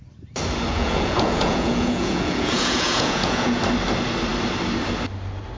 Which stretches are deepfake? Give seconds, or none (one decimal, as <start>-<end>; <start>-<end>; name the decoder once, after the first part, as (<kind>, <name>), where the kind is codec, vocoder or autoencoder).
0.7-3.6 (vocoder, Vocos)